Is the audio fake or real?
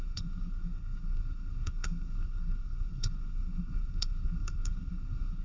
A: fake